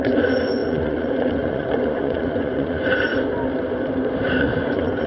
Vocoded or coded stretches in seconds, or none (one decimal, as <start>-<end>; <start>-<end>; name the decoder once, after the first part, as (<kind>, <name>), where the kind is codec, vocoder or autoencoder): 0.0-3.1 (vocoder, Vocos); 4.4-5.1